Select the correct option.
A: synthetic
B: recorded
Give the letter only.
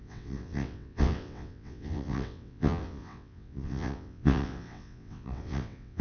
A